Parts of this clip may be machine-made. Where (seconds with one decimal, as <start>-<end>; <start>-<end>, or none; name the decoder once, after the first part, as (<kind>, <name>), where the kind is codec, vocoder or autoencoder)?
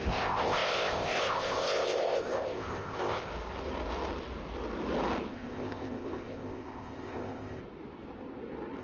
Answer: 0.0-3.3 (codec, ZipCodec); 5.3-7.6